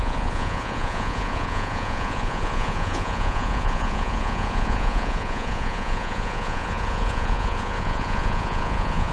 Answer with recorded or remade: remade